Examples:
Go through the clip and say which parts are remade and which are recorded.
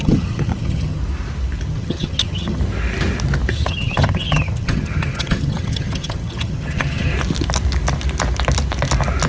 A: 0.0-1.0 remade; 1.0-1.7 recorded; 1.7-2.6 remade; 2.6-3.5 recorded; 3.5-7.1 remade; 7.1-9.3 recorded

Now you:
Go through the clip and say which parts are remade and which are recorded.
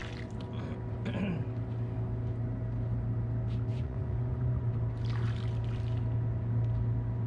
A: 0.0-3.7 recorded; 3.7-4.7 remade; 4.7-7.3 recorded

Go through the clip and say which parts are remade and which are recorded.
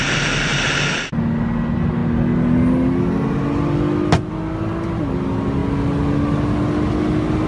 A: 0.0-7.5 recorded